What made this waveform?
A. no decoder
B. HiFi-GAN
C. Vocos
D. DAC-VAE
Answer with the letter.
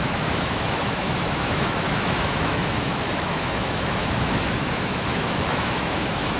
D